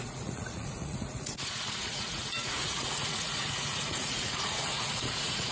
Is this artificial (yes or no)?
yes